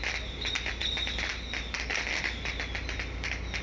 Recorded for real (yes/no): yes